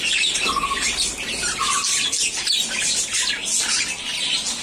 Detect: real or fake real